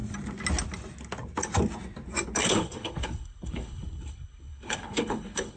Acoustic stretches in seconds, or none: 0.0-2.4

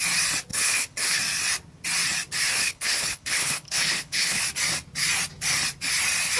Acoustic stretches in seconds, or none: 0.0-0.5; 1.2-2.6; 4.4-6.4

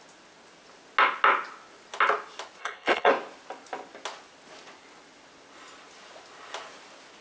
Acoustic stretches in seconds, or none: 0.0-2.6; 3.1-7.2

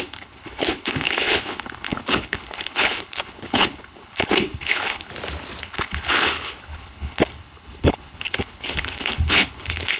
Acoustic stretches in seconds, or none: 5.1-5.6

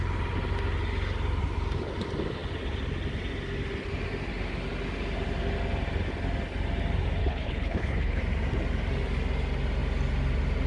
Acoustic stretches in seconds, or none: 0.0-7.2; 8.2-10.7